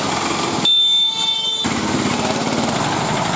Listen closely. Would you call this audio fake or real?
real